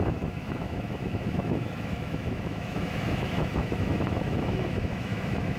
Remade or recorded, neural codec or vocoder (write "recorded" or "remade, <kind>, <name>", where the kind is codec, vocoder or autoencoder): remade, autoencoder, DAC-VAE